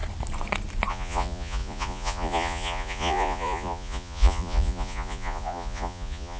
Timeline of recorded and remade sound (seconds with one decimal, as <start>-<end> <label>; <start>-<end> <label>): 0.0-0.9 recorded; 0.9-6.4 remade